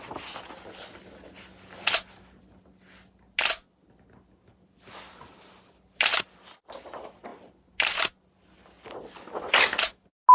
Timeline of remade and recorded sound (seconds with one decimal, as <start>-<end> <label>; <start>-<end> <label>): 0.0-10.3 recorded